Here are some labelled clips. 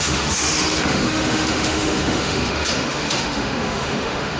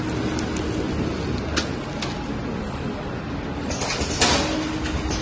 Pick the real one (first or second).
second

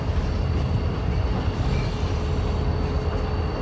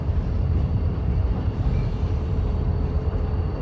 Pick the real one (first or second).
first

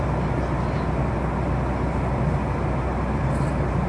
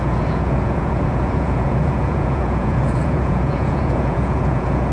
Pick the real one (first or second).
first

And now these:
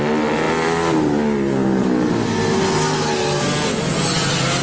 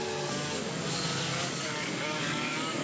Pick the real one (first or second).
first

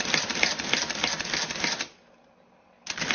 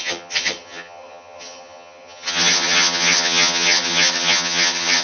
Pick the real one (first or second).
first